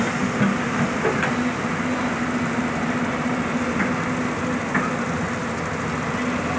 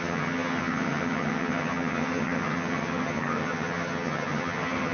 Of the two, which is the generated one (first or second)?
second